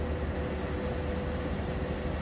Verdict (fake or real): real